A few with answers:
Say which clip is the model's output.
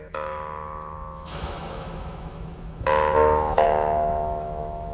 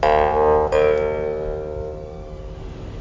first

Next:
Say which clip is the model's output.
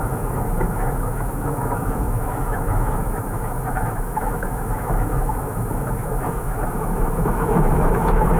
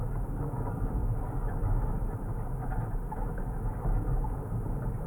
first